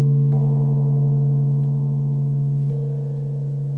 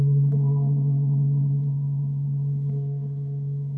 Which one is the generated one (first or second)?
second